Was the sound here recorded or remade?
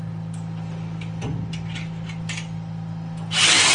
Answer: recorded